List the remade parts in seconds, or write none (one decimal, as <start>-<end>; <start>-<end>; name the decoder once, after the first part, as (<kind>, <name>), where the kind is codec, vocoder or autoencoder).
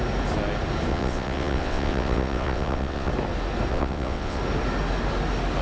0.9-3.1 (vocoder, WaveNeXt); 3.7-4.4